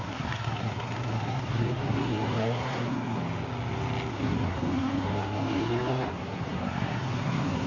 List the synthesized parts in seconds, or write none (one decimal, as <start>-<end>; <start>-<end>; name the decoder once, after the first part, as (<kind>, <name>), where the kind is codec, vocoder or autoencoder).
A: 0.0-3.2 (codec, SNAC); 4.1-7.7